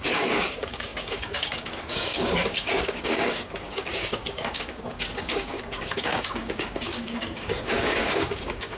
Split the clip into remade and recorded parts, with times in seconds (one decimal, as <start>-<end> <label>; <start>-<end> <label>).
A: 0.0-8.8 remade